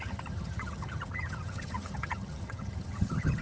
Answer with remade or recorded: remade